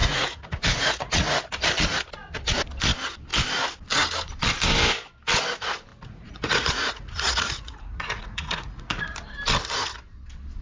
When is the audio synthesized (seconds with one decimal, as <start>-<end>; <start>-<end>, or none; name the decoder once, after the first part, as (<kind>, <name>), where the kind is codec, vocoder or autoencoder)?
0.0-1.5 (vocoder, Vocos); 5.9-9.0